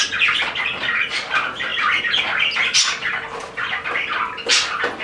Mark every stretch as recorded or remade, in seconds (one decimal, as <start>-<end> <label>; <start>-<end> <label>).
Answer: 0.0-5.0 recorded